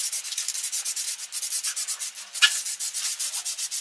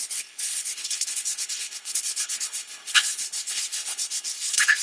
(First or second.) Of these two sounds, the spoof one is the second